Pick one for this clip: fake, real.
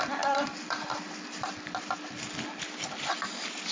real